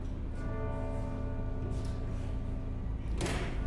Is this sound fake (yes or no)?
no